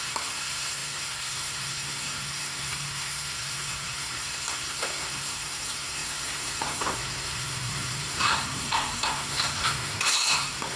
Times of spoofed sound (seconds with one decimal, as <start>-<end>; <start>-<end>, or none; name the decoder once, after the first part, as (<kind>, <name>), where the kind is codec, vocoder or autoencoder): 0.0-10.8 (codec, SNAC)